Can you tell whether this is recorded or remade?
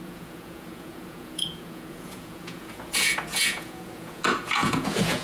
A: remade